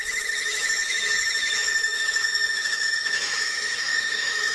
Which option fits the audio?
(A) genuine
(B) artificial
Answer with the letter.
B